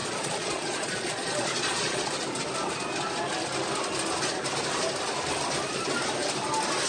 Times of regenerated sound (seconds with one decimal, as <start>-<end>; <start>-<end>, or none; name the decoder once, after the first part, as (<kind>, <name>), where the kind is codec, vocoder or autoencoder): 0.0-2.1 (vocoder, Vocos)